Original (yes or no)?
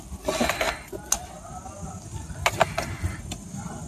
yes